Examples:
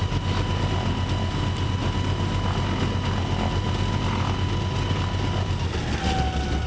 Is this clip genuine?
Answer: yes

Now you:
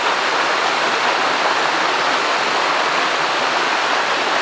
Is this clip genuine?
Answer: yes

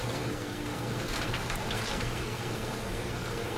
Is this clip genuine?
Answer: no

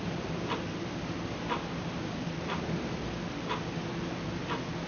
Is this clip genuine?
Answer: yes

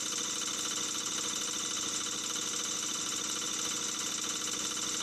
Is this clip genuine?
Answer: yes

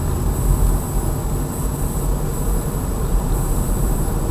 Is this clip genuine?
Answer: yes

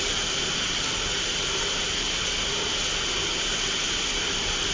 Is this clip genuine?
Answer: yes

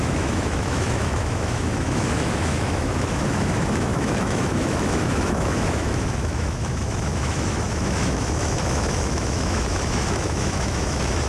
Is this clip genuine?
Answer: no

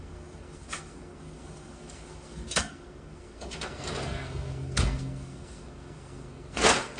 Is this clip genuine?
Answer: no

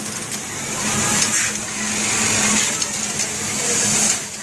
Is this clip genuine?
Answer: yes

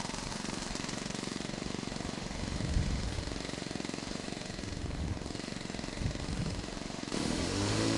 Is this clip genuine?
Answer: no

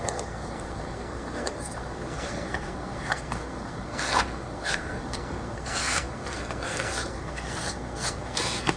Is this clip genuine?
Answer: no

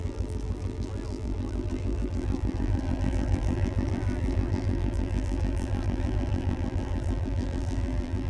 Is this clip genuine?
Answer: no